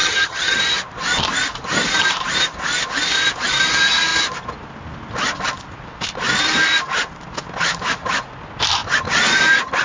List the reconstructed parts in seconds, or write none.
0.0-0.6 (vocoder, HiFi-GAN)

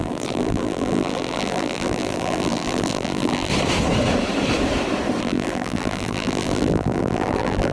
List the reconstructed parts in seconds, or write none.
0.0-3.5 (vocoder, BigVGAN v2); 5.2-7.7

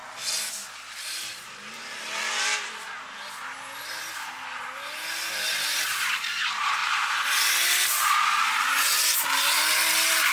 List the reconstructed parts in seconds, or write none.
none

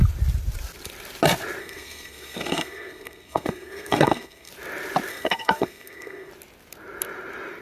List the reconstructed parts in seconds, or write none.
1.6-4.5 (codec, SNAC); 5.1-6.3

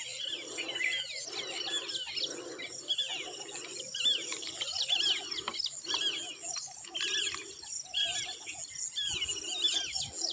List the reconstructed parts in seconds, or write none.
none

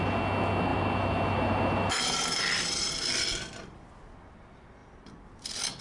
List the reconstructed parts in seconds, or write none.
0.7-1.9 (vocoder, BigVGAN v2); 4.8-5.8